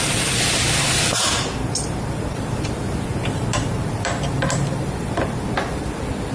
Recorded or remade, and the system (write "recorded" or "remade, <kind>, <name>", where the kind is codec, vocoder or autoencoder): remade, vocoder, BigVGAN v2